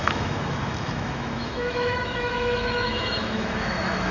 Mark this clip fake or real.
fake